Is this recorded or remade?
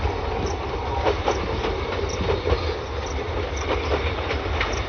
recorded